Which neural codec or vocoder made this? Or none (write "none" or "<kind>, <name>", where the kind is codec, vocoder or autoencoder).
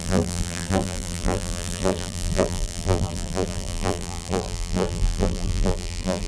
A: vocoder, BigVGAN v2